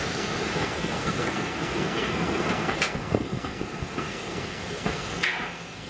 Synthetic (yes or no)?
yes